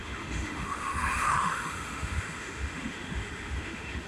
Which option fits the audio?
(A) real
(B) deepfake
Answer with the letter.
B